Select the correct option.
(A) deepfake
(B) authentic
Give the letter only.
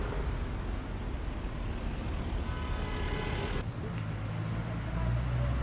B